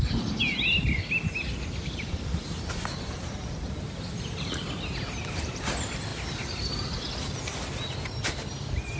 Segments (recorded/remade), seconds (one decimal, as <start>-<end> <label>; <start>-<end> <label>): 0.0-9.0 recorded